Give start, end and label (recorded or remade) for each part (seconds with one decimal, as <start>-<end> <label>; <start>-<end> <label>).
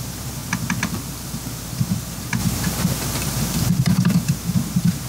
0.0-0.4 remade; 0.4-1.5 recorded; 1.5-5.1 remade